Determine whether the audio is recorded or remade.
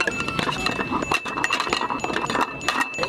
recorded